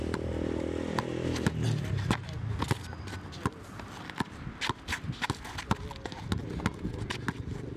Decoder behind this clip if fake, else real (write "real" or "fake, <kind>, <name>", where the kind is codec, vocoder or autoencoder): real